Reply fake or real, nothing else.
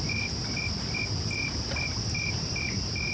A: real